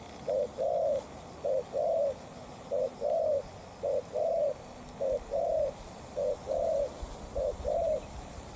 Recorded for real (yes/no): yes